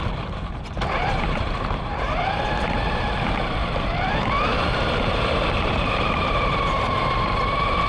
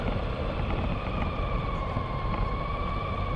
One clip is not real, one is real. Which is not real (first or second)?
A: first